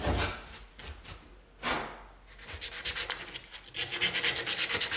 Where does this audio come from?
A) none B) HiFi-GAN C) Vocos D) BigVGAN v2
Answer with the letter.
A